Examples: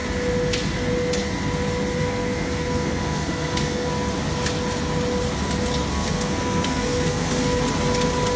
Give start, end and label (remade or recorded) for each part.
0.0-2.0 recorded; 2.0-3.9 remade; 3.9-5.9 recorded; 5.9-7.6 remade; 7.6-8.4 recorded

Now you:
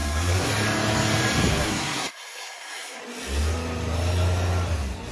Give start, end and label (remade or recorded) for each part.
0.0-0.5 remade; 0.5-1.5 recorded; 1.5-3.0 remade; 3.0-5.1 recorded

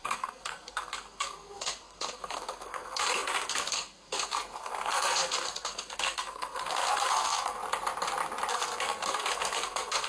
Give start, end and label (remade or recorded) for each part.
0.0-7.6 remade; 7.6-8.5 recorded; 8.5-10.1 remade